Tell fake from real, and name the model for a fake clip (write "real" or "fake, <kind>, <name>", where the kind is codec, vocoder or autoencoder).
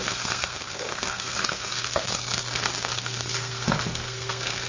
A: fake, codec, SNAC